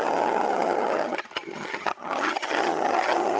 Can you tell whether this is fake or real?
fake